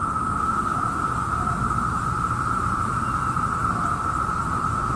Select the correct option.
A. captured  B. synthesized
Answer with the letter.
B